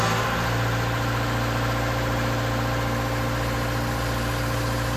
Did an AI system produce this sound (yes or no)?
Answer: no